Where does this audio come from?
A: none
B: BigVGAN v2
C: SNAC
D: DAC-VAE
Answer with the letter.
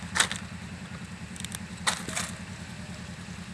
A